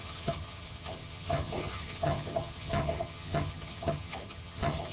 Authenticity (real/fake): fake